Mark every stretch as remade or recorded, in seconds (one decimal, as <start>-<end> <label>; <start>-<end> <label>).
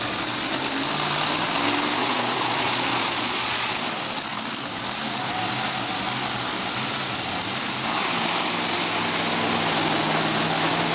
0.0-2.0 recorded; 2.0-3.7 remade; 3.7-10.9 recorded